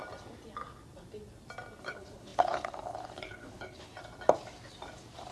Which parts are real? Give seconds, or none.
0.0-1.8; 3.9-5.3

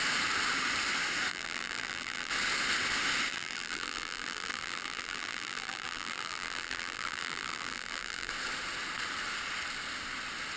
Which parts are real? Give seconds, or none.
0.0-1.3; 2.3-3.3; 8.3-10.6

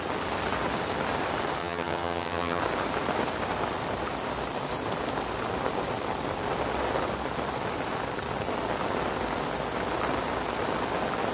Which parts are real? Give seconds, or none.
0.0-1.6; 2.6-11.3